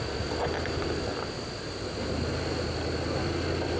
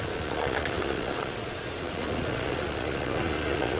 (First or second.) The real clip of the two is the first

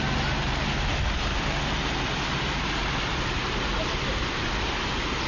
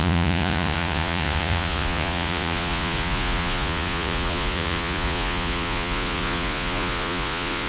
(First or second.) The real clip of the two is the first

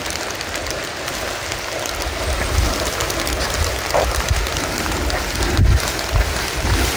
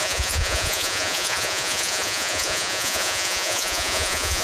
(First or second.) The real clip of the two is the first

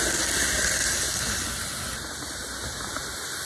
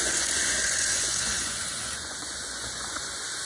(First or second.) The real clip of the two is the first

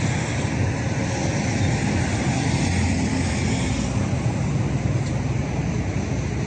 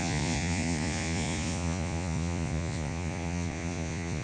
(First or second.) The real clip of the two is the first